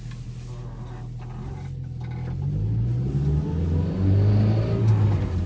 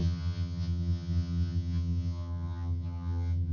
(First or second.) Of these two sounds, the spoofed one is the second